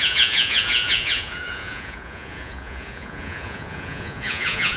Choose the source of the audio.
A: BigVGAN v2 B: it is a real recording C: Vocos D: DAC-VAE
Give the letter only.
C